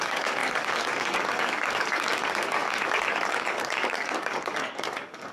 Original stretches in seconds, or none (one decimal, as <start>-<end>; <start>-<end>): none